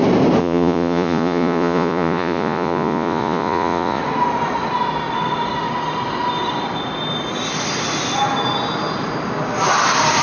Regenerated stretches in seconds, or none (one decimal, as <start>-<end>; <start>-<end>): 0.4-4.0

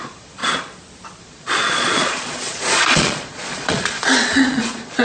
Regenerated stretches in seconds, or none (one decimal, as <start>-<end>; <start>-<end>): 0.0-0.4; 1.2-5.0

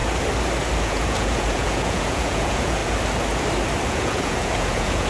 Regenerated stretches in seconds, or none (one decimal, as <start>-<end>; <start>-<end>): 0.8-2.8; 3.9-5.1

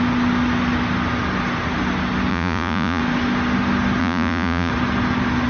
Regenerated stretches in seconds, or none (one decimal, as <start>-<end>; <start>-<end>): 2.3-3.0; 4.0-4.7

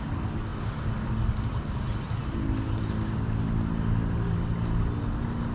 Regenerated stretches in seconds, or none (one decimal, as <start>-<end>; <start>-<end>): none

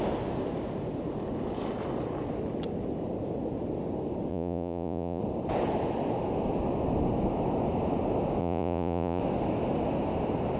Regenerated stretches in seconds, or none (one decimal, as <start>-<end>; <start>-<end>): 4.3-5.2; 8.4-9.2